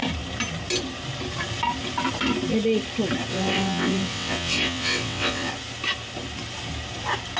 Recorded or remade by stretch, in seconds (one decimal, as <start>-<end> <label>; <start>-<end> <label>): 0.0-3.3 recorded; 3.3-5.5 remade; 5.5-7.4 recorded